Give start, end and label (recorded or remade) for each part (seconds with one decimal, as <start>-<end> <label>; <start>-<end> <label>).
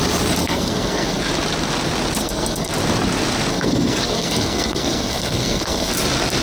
0.0-0.4 recorded; 0.4-1.2 remade; 1.2-2.2 recorded; 2.2-2.7 remade; 2.7-3.5 recorded; 3.5-5.9 remade; 5.9-6.4 recorded